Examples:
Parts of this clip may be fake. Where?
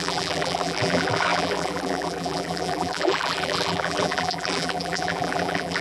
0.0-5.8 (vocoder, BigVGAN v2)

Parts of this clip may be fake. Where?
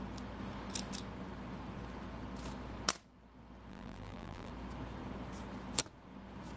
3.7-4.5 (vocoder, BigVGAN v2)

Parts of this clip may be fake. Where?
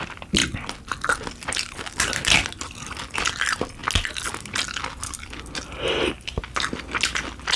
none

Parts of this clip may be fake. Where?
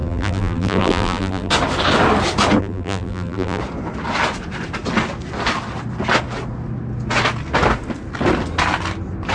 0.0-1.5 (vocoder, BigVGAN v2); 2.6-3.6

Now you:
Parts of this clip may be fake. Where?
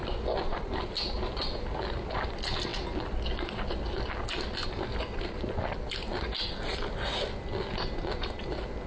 none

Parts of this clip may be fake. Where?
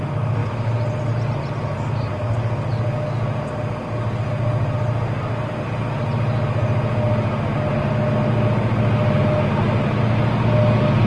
none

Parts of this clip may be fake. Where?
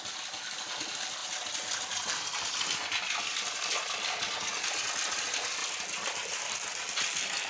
none